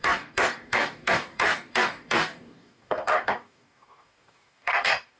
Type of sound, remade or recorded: remade